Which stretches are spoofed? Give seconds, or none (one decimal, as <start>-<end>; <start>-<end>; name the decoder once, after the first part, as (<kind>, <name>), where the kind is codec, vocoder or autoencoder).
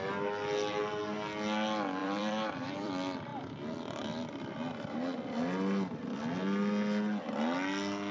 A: 2.0-2.9 (vocoder, BigVGAN v2)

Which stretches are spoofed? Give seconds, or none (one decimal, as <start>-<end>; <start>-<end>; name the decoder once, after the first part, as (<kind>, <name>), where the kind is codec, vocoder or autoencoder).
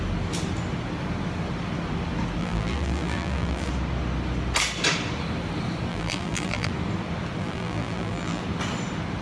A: 2.4-3.7 (vocoder, BigVGAN v2); 5.9-6.7; 7.4-8.4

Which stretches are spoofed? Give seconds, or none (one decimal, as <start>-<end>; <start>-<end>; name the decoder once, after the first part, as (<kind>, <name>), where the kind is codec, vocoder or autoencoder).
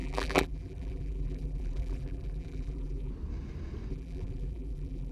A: 0.0-3.1 (vocoder, BigVGAN v2); 3.9-5.1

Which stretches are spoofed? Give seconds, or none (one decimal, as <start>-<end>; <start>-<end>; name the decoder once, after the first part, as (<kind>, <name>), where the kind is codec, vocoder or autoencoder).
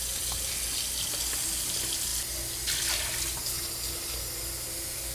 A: none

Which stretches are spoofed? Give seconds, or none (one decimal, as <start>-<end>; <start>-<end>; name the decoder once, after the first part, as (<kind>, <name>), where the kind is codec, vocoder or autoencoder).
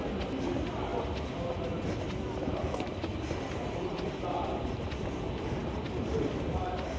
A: none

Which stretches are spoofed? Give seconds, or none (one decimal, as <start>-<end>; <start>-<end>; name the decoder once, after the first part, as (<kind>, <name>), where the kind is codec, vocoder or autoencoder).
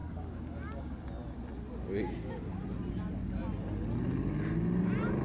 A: 2.5-3.4 (vocoder, BigVGAN v2); 4.8-5.2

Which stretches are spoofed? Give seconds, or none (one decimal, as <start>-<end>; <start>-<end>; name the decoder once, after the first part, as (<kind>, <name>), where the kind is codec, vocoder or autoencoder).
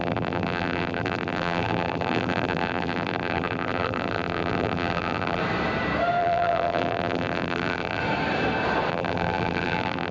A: 0.0-5.4 (vocoder, BigVGAN v2); 6.2-8.0; 8.9-10.1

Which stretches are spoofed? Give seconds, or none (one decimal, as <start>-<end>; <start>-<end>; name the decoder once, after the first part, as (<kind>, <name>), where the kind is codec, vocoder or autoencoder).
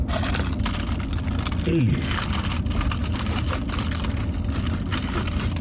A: 3.0-3.6 (vocoder, BigVGAN v2); 4.9-5.6